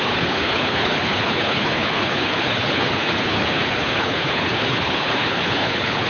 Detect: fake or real fake